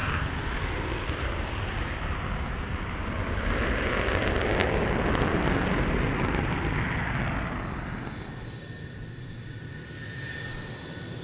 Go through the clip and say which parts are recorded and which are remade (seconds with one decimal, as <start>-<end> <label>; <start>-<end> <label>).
0.0-11.2 recorded